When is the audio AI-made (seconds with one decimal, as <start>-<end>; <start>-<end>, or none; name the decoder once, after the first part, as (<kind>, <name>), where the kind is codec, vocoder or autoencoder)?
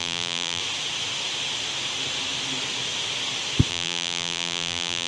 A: 0.0-0.6 (vocoder, BigVGAN v2); 3.7-5.1